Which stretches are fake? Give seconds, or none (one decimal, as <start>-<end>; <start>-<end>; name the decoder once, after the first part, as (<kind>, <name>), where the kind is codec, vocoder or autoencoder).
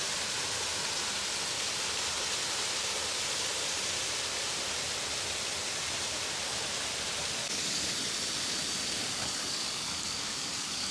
7.4-8.0 (codec, DAC); 9.0-10.9